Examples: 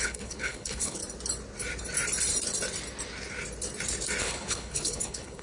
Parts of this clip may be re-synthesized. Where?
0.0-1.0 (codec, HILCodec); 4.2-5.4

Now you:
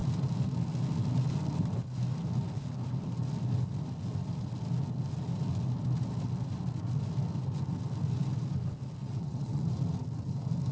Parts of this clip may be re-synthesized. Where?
9.0-9.6 (vocoder, WaveNeXt)

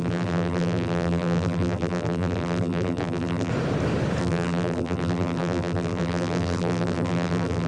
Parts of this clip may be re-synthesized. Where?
0.0-3.5 (vocoder, BigVGAN v2); 4.2-7.7

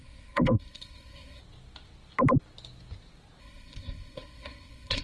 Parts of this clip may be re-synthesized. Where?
0.0-1.4 (codec, SNAC); 3.4-5.0

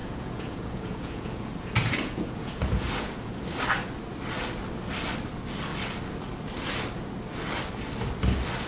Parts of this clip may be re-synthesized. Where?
0.0-3.4 (vocoder, Vocos)